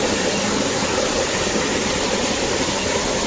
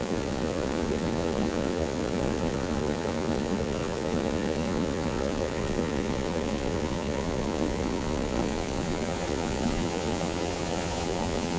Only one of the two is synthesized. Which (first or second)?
second